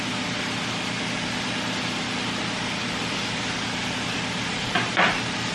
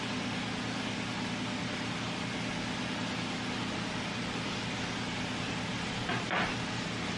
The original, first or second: second